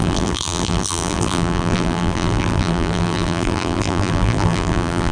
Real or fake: fake